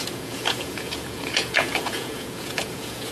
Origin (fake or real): fake